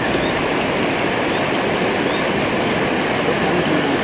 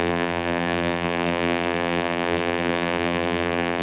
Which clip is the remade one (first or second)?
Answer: second